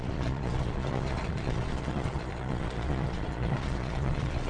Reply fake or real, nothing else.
fake